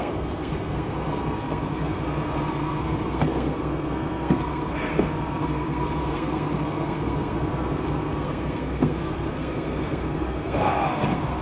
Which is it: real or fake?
fake